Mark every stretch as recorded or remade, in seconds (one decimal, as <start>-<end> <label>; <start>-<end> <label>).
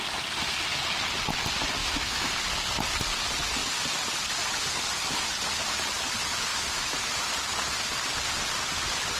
0.0-1.8 recorded; 1.8-2.3 remade; 2.3-6.5 recorded; 6.5-7.2 remade; 7.2-9.2 recorded